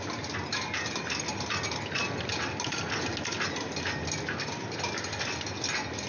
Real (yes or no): yes